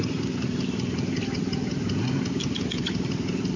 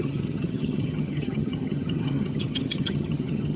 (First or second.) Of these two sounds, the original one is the first